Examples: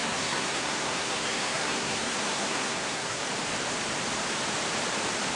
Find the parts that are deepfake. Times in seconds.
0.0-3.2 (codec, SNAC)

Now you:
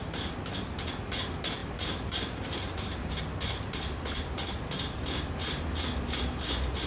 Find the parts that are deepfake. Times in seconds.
1.6-3.2 (vocoder, BigVGAN v2)